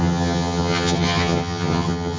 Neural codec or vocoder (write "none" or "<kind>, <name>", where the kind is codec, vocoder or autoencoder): vocoder, HiFi-GAN